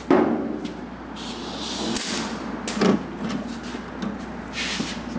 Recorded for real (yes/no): yes